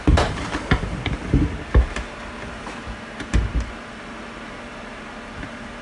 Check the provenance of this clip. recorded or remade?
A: remade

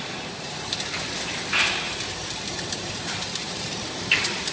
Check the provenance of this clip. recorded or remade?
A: remade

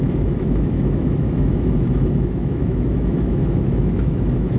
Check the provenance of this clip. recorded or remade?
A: remade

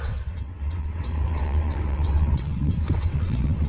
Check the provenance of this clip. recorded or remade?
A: remade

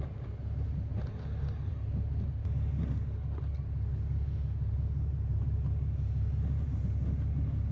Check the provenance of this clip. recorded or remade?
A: recorded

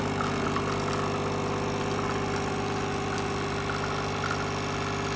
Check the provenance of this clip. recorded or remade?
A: recorded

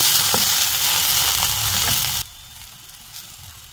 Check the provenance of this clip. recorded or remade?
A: recorded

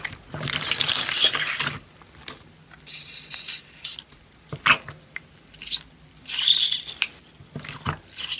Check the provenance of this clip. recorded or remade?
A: recorded